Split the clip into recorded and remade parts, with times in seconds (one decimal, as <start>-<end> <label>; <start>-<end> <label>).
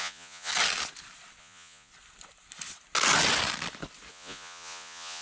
0.0-0.5 remade; 0.5-1.4 recorded; 1.4-1.9 remade; 1.9-4.1 recorded; 4.1-5.2 remade